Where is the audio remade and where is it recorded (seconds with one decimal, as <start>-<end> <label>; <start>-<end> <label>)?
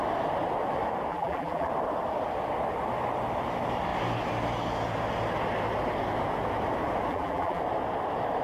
0.0-1.1 recorded; 1.1-1.7 remade; 1.7-7.1 recorded; 7.1-7.6 remade; 7.6-8.4 recorded